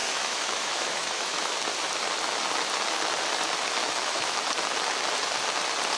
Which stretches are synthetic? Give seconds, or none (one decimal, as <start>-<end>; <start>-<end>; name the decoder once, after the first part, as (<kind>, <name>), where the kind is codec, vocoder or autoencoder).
0.0-1.6 (autoencoder, DAC-VAE); 3.8-4.4